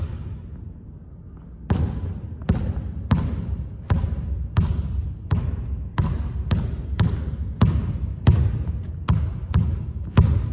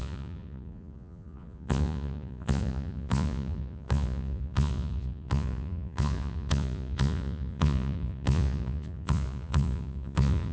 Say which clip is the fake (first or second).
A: second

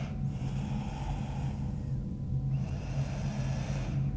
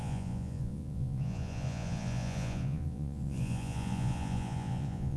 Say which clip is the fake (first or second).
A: second